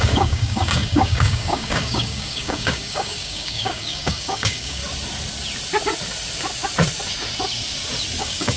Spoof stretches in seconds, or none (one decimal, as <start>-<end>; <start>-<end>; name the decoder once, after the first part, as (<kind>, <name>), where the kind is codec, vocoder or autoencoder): 0.0-4.8 (codec, DAC); 8.2-8.6